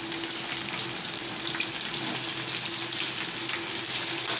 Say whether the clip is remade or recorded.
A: recorded